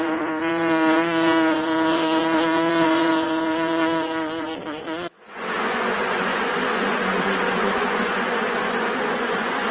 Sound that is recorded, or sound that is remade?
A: remade